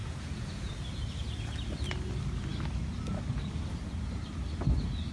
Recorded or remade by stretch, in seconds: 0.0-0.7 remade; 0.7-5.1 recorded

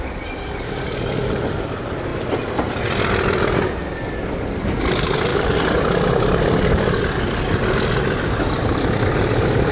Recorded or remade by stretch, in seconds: 0.0-9.7 recorded

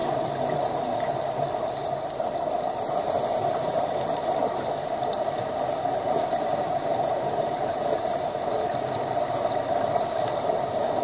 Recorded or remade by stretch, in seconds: 0.0-1.6 remade; 1.6-11.0 recorded

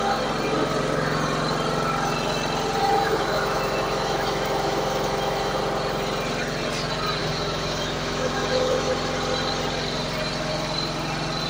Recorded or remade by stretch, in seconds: 0.0-2.8 recorded; 2.8-5.6 remade; 5.6-7.2 recorded; 7.2-8.9 remade; 8.9-11.5 recorded

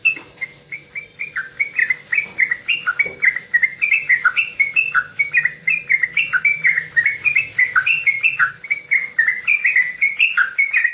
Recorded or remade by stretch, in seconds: 0.0-10.9 recorded

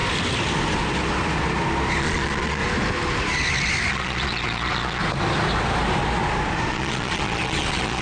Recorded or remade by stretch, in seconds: 0.0-2.0 recorded; 2.0-2.6 remade; 2.6-3.9 recorded; 3.9-5.0 remade; 5.0-6.7 recorded; 6.7-8.0 remade